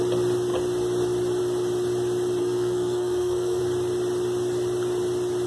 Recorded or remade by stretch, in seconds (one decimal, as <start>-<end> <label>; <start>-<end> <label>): 0.0-2.4 recorded; 2.4-3.6 remade; 3.6-5.5 recorded